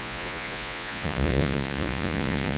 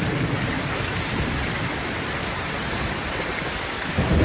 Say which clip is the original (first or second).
second